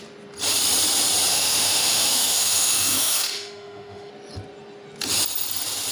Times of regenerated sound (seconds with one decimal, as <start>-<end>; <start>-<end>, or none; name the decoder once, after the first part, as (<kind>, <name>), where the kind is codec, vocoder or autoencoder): 1.3-4.1 (autoencoder, DAC-VAE)